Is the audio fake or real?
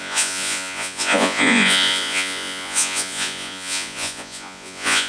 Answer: fake